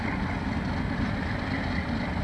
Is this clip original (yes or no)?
yes